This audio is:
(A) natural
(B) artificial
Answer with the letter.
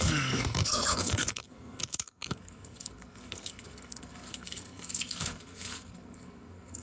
B